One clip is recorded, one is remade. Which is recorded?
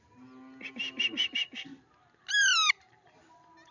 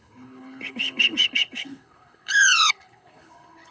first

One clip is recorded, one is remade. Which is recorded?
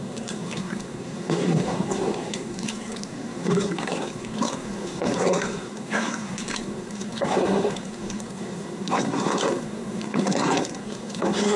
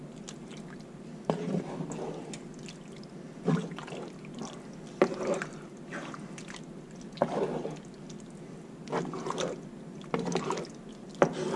second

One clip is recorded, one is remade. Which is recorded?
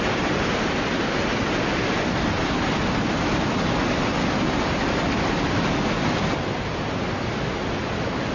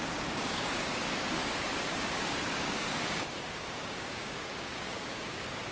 first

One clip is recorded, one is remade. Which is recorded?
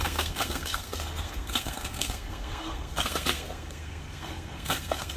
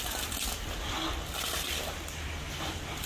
second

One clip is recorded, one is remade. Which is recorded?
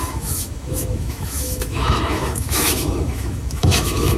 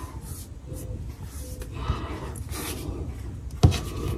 second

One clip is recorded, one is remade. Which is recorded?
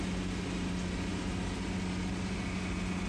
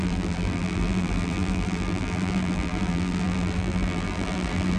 first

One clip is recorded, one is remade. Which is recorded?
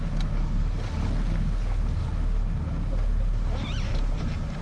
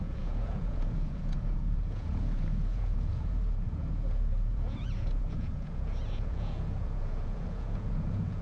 first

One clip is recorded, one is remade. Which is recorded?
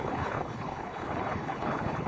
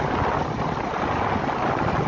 second